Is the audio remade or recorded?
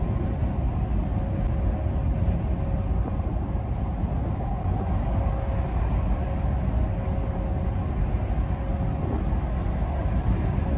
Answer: recorded